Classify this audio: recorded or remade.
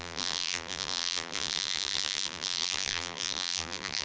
remade